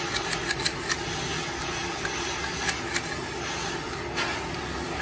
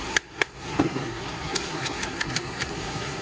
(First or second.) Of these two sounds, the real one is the first